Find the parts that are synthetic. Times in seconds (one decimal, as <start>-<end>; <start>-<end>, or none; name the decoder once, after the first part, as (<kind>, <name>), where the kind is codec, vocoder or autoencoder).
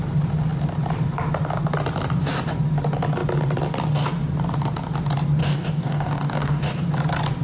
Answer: 5.4-6.7 (codec, DAC)